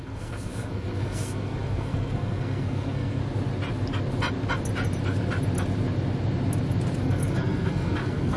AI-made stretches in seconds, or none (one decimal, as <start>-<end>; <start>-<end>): 0.0-3.2; 7.0-8.4